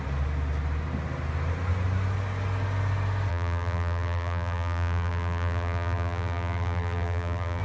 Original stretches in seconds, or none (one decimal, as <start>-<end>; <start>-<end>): 0.0-3.3